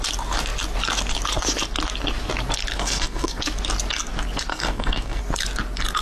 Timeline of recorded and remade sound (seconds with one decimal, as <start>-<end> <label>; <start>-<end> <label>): 0.0-2.7 recorded; 2.7-3.4 remade; 3.4-4.5 recorded; 4.5-5.2 remade; 5.2-6.0 recorded